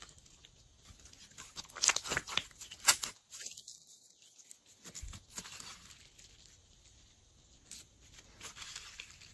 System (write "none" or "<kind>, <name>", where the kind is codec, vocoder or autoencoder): none